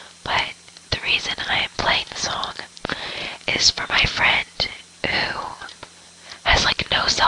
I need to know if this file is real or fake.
real